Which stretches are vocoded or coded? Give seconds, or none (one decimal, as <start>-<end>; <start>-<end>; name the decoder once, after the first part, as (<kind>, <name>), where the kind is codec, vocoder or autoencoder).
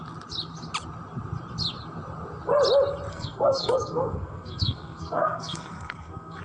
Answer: 3.1-6.4 (codec, SNAC)